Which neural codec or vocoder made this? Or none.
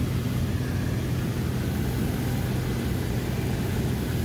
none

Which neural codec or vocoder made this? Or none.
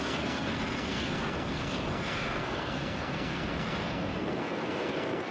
codec, SNAC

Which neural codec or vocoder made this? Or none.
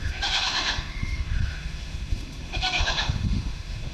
autoencoder, DAC-VAE